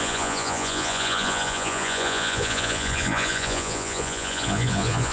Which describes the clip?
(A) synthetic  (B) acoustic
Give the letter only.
A